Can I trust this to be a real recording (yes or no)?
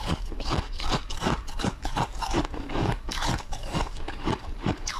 no